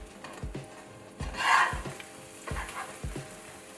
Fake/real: real